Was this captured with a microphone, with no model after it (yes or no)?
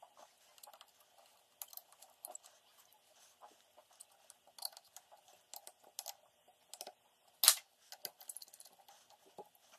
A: yes